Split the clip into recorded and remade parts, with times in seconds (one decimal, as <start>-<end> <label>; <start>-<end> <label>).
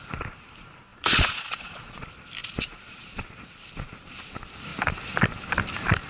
0.0-0.9 recorded; 0.9-2.0 remade; 2.0-2.4 recorded; 2.4-3.2 remade; 3.2-6.1 recorded